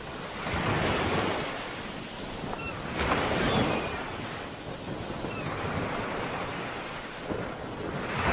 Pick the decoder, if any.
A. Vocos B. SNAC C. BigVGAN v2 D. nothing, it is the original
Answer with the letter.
D